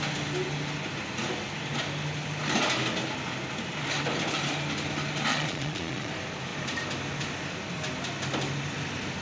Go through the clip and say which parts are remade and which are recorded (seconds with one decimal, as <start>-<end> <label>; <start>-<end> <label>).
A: 0.0-5.3 recorded; 5.3-6.1 remade; 6.1-9.2 recorded